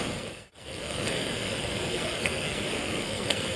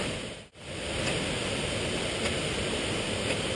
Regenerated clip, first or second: first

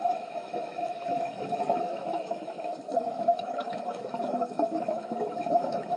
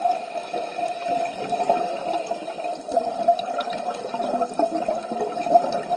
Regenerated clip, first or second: first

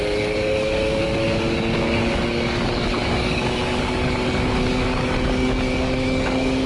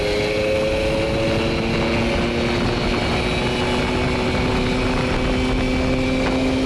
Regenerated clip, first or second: first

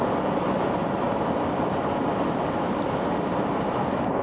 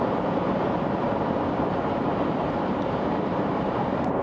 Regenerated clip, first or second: second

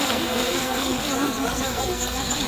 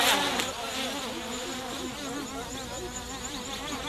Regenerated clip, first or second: first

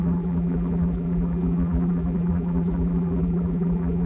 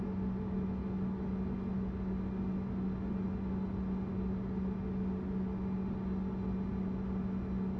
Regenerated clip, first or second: first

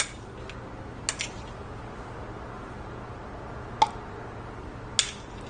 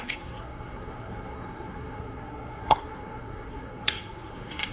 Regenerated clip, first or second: second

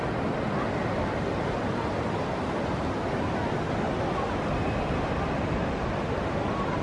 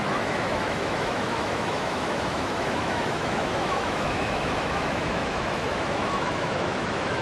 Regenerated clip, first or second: second